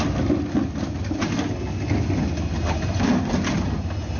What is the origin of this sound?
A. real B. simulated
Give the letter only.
A